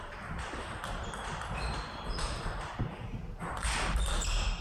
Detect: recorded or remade recorded